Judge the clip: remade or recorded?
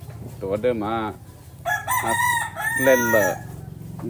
recorded